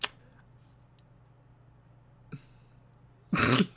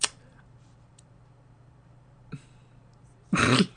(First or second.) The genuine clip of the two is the first